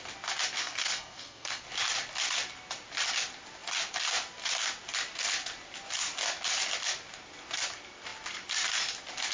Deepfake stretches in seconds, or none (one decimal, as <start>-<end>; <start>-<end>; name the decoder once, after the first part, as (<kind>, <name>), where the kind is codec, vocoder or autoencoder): 0.6-1.6 (codec, SNAC)